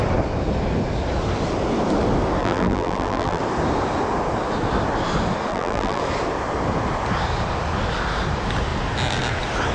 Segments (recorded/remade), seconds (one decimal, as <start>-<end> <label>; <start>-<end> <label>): 0.0-2.4 recorded; 2.4-3.4 remade; 3.4-5.5 recorded; 5.5-6.0 remade; 6.0-9.7 recorded